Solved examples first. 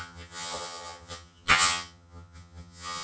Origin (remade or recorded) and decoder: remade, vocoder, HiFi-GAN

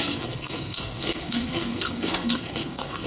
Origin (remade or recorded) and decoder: remade, codec, SNAC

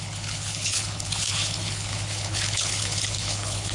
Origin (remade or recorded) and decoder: remade, codec, HILCodec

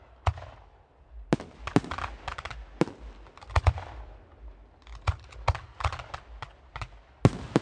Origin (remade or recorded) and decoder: recorded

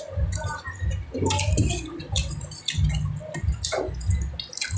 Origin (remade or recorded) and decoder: recorded